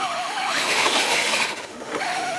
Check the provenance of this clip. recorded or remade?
remade